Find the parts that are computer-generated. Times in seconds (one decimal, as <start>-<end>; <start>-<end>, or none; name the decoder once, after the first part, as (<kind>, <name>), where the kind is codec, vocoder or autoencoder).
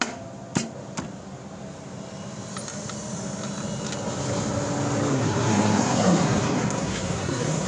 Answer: 5.1-7.7 (codec, SNAC)